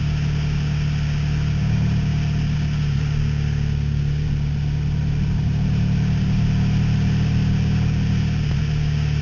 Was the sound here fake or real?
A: real